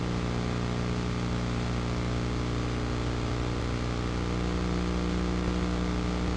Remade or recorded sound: recorded